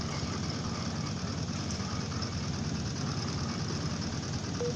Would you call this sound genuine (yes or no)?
yes